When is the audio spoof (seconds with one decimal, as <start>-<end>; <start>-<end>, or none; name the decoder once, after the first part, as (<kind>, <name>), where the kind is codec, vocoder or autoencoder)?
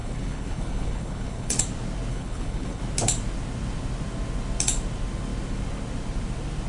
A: 0.0-1.6 (codec, HILCodec); 2.1-2.8